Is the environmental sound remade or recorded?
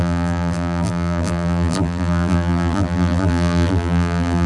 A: remade